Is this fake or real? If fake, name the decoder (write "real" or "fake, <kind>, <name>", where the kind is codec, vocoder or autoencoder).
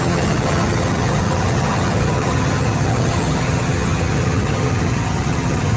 fake, vocoder, HiFi-GAN